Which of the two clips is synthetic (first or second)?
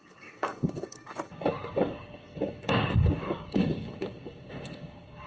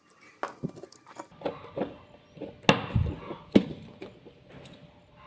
first